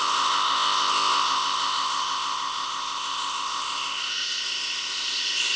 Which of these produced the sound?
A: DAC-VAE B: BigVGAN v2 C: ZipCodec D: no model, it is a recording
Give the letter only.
C